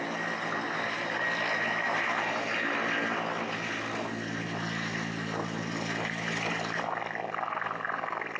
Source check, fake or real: real